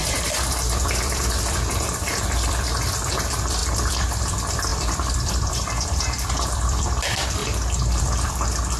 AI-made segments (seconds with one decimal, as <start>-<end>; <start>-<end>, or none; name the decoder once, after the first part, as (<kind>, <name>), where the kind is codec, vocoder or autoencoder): 0.0-7.4 (vocoder, BigVGAN v2); 8.0-8.8